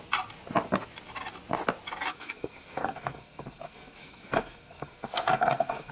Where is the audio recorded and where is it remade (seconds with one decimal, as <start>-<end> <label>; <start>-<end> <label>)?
0.0-2.1 recorded; 2.1-5.9 remade